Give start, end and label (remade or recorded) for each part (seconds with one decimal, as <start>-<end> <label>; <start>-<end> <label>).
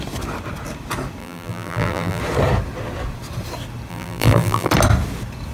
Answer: 0.0-1.2 recorded; 1.2-2.2 remade; 2.2-3.9 recorded; 3.9-4.7 remade; 4.7-5.5 recorded